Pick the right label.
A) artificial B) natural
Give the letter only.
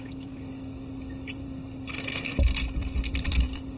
A